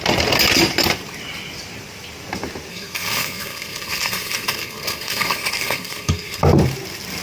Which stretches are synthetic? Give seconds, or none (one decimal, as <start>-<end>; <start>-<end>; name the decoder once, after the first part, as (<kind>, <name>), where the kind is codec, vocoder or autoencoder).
2.7-6.4 (codec, SNAC)